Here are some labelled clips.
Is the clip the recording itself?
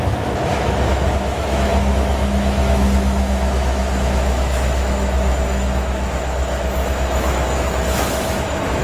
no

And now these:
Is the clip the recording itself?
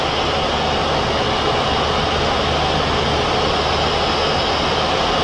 yes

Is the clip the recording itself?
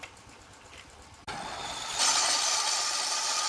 yes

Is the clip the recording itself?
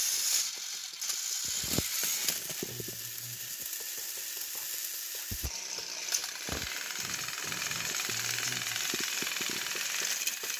yes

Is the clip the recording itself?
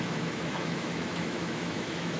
no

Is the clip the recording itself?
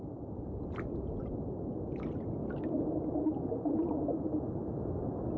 yes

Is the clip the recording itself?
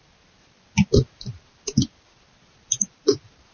yes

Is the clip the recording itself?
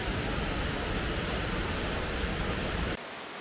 yes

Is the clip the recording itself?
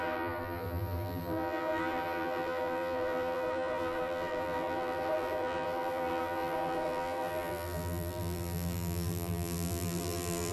no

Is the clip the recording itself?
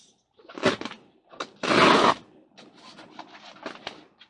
yes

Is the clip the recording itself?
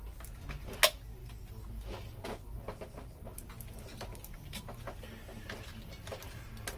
yes